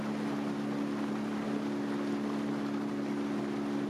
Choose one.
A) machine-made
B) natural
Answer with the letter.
B